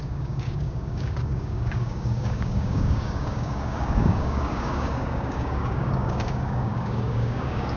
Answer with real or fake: fake